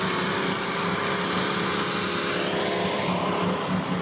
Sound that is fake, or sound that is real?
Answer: real